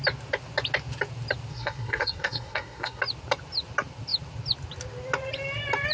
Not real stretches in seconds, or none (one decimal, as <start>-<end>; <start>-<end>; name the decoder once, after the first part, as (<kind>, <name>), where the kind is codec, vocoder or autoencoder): 1.5-3.0 (codec, SNAC)